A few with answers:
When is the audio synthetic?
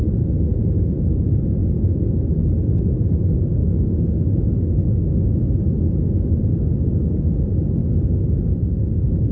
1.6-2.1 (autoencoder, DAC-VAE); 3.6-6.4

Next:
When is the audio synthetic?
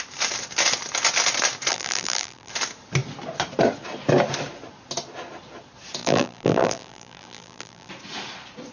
1.7-2.5 (vocoder, BigVGAN v2); 6.0-7.9